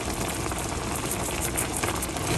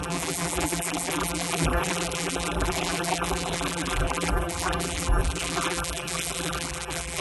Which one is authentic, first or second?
first